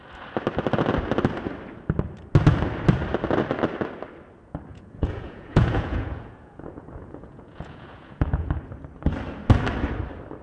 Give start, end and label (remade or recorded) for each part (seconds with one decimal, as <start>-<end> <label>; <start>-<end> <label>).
0.0-4.7 recorded; 4.7-8.5 remade; 8.5-10.4 recorded